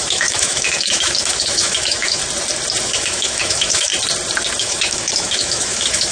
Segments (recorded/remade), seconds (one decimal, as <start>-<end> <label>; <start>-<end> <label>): 0.0-2.2 remade; 2.2-2.8 recorded; 2.8-3.9 remade; 3.9-4.6 recorded; 4.6-6.1 remade

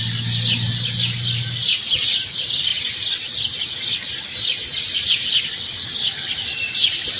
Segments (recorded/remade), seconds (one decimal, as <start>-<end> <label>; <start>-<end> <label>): 0.0-7.2 recorded

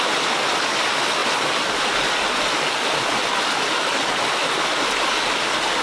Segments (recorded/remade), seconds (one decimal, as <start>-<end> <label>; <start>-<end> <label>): 0.0-5.8 recorded

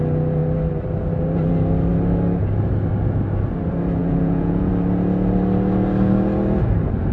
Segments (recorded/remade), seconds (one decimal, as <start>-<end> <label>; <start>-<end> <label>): 0.0-4.0 recorded; 4.0-4.7 remade; 4.7-7.1 recorded

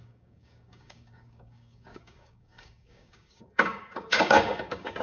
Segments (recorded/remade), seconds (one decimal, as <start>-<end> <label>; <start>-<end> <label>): 0.0-5.0 remade